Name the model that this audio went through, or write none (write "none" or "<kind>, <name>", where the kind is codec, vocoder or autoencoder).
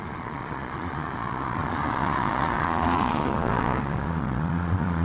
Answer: vocoder, Vocos